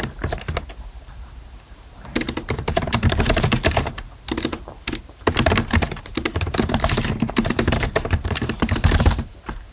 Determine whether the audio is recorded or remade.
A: remade